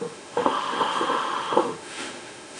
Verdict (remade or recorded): remade